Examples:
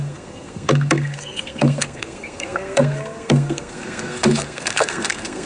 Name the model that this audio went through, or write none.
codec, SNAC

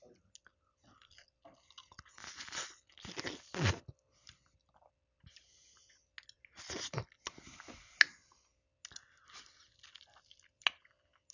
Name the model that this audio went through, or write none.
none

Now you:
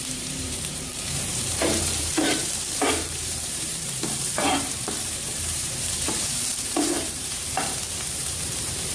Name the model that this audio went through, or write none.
vocoder, BigVGAN v2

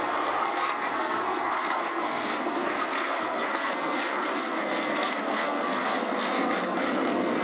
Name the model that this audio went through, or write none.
codec, SNAC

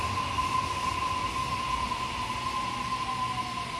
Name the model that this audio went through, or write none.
none